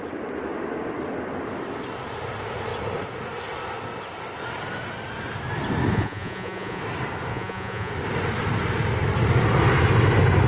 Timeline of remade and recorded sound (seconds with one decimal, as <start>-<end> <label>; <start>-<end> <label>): 0.0-5.9 recorded; 5.9-6.8 remade; 6.8-7.3 recorded; 7.3-7.9 remade; 7.9-10.5 recorded